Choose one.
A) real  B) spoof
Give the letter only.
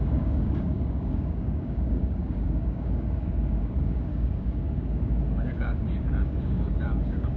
B